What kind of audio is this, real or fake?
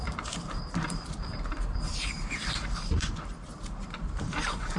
fake